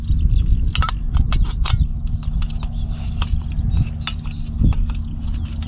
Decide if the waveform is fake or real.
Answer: real